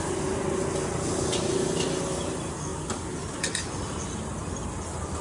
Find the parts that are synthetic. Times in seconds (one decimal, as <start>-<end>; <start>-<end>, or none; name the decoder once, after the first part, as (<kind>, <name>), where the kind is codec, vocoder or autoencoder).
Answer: none